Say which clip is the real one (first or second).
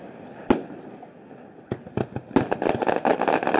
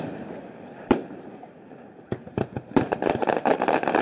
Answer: first